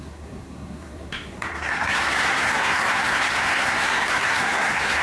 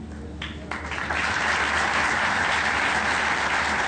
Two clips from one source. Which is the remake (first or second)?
first